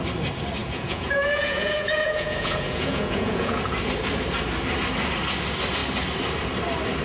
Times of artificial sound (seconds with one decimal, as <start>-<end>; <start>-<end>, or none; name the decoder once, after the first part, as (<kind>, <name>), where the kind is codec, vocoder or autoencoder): 0.6-3.6 (vocoder, Vocos)